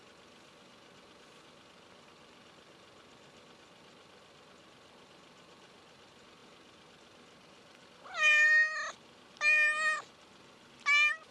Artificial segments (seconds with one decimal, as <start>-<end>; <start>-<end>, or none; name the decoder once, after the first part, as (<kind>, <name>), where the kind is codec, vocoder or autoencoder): none